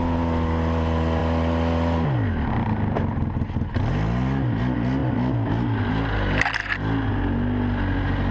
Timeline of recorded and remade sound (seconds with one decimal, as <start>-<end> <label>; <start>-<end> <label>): 0.0-8.3 recorded